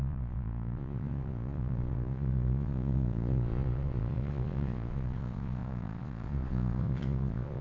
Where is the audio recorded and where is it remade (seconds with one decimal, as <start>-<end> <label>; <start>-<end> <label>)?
0.0-7.6 remade